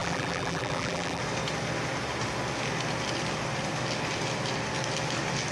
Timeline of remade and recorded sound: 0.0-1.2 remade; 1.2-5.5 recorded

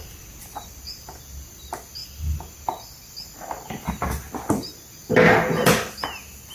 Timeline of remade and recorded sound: 0.0-6.5 recorded

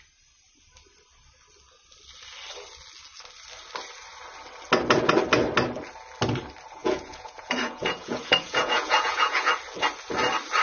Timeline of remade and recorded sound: 0.0-6.8 recorded; 6.8-9.5 remade; 9.5-10.6 recorded

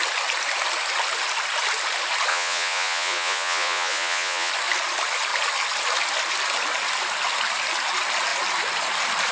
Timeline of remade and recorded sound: 0.0-2.3 recorded; 2.3-4.5 remade; 4.5-9.3 recorded